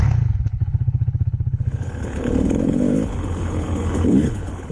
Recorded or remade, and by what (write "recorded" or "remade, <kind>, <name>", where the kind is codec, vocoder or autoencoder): remade, codec, HILCodec